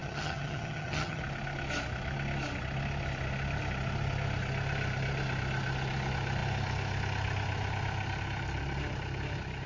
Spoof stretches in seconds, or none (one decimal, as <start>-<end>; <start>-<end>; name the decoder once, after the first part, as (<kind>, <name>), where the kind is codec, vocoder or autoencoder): 0.0-1.2 (vocoder, HiFi-GAN)